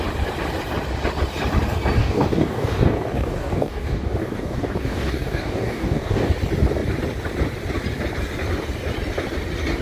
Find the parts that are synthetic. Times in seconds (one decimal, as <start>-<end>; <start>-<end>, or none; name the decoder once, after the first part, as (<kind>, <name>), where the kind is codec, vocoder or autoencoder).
2.0-6.3 (codec, DAC)